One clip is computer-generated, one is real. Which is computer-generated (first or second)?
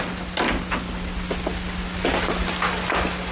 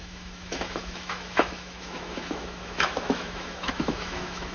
second